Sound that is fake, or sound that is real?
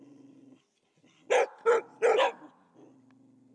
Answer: real